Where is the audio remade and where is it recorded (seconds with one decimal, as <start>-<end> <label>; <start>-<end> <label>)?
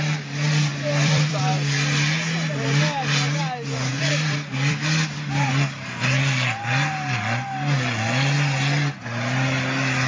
0.0-0.7 recorded; 0.7-1.4 remade; 1.4-3.9 recorded; 3.9-5.5 remade; 5.5-10.1 recorded